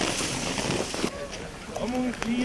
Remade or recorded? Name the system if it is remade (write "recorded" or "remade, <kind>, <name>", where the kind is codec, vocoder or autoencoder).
recorded